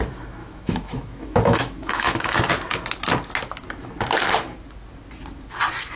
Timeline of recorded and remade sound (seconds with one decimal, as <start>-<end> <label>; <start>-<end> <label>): 0.0-0.4 recorded; 0.4-2.5 remade; 2.5-6.0 recorded